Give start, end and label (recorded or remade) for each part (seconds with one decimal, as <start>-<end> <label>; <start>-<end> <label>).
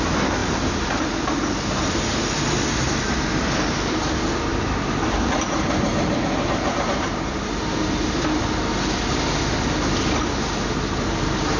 0.0-0.4 recorded; 0.4-1.5 remade; 1.5-4.5 recorded; 4.5-8.4 remade; 8.4-11.6 recorded